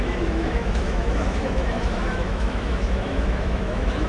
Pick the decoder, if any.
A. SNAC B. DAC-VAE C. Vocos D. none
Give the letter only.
B